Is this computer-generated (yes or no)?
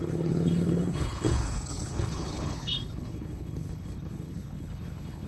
yes